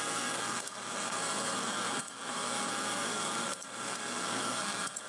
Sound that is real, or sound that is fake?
fake